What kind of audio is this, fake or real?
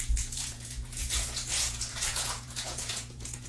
fake